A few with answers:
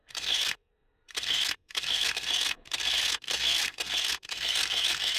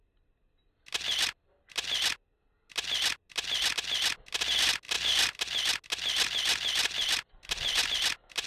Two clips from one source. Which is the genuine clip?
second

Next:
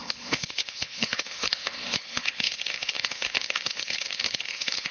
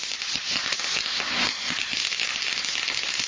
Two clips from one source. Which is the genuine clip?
second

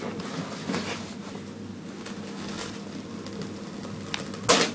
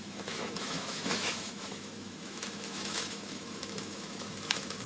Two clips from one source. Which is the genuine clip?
first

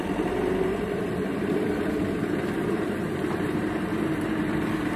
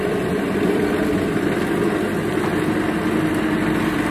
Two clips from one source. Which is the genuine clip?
second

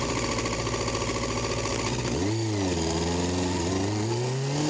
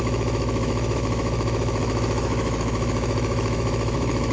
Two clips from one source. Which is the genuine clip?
first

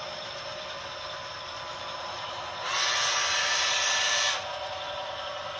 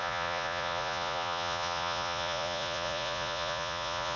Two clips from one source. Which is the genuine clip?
first